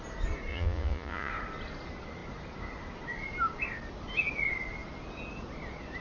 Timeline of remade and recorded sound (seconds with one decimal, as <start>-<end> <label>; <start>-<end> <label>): 0.0-0.5 recorded; 0.5-1.3 remade; 1.3-6.0 recorded